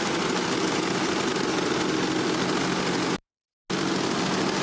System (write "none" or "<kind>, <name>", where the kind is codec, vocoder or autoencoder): none